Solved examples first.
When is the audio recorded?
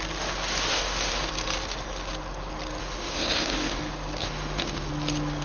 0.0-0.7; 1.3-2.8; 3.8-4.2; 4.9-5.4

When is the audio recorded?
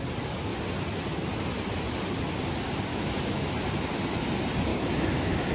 0.0-2.9; 3.5-4.7